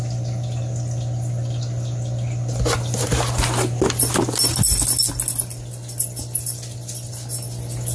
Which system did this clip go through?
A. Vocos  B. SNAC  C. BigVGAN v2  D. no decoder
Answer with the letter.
D